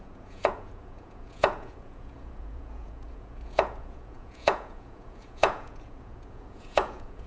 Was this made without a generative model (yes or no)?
no